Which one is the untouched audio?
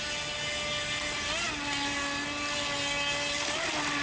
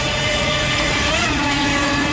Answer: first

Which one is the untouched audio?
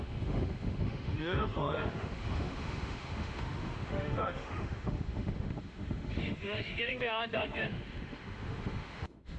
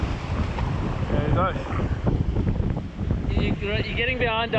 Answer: second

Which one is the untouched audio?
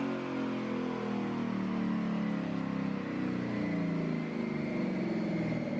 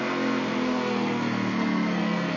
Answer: first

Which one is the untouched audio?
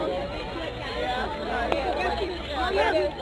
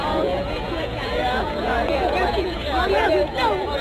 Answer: first